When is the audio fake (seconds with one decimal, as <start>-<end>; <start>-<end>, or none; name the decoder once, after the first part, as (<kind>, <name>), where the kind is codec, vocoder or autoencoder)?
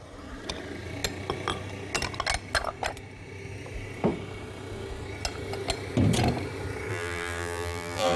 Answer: 6.9-8.2 (vocoder, BigVGAN v2)